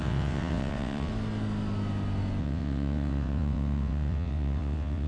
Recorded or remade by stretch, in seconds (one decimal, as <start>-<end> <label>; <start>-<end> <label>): 0.0-1.1 remade; 1.1-2.4 recorded; 2.4-5.1 remade